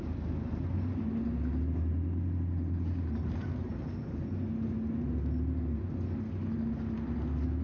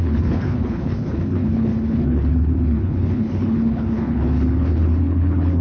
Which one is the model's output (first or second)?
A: second